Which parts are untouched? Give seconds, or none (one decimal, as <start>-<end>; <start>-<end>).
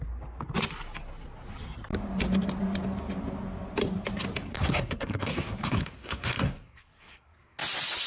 0.0-4.5; 7.6-8.1